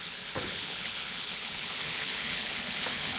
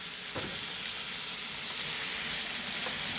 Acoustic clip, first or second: second